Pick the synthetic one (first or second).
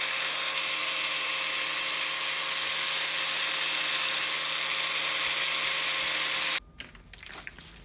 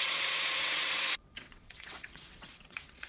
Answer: second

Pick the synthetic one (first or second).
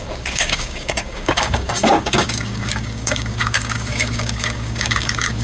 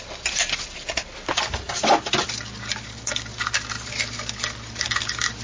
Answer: first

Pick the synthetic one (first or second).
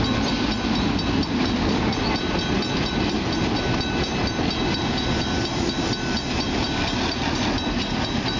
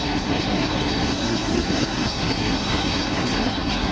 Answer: second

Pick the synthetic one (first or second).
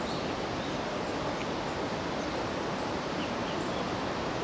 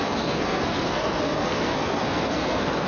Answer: second